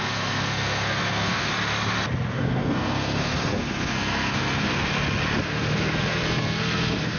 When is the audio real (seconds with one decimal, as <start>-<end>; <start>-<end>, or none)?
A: 1.5-2.3; 4.9-5.4